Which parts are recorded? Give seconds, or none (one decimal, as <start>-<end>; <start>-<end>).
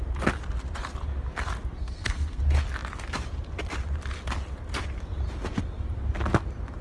0.0-1.8; 2.4-6.8